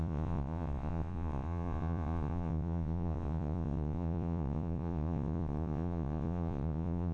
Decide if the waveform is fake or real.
fake